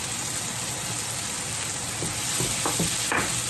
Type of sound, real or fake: real